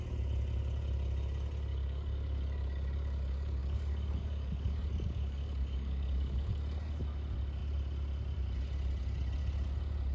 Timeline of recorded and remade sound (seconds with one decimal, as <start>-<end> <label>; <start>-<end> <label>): 0.0-1.7 recorded; 1.7-6.6 remade; 6.6-10.1 recorded